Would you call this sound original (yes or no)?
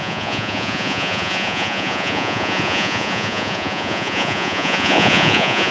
no